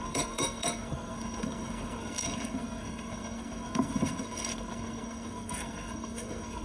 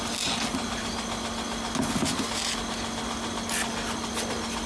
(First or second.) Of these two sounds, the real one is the second